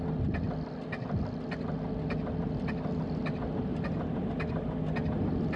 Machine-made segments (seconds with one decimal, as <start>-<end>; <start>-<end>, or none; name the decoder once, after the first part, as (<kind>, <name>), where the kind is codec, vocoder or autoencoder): none